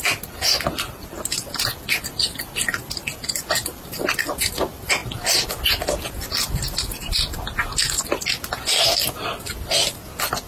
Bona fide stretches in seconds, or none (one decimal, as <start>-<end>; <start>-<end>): 0.0-10.5